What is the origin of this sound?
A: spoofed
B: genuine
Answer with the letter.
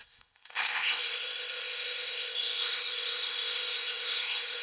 A